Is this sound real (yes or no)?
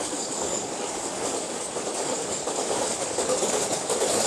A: no